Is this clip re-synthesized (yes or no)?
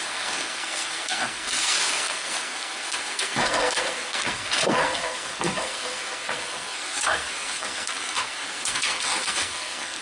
yes